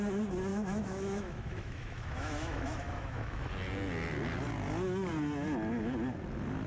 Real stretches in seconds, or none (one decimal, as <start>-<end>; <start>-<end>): 0.0-0.5; 3.5-6.7